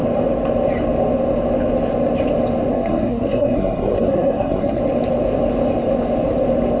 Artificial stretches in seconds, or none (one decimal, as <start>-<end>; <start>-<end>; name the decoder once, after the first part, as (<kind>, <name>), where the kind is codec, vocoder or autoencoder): 2.7-4.8 (codec, SNAC)

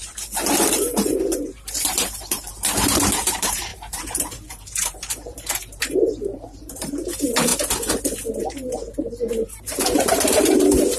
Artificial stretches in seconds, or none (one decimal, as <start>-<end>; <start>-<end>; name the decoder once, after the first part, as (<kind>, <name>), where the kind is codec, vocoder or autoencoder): 0.0-7.5 (vocoder, BigVGAN v2); 8.4-11.0